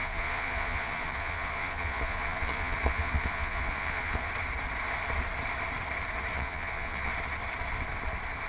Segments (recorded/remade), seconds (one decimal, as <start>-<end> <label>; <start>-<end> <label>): 0.0-4.3 remade; 4.3-6.3 recorded; 6.3-7.1 remade; 7.1-8.5 recorded